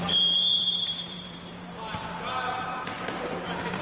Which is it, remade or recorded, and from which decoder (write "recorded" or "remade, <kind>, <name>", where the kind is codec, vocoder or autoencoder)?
remade, vocoder, BigVGAN v2